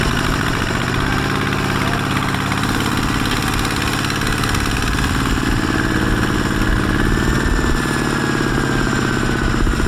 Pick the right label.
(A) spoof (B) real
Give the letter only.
B